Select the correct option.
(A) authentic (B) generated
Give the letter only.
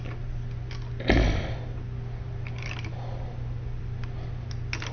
A